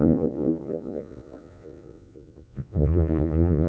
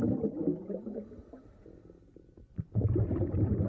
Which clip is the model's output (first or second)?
first